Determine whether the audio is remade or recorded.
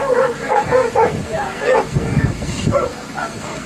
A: remade